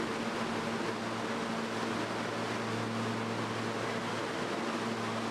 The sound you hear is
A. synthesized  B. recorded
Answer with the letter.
B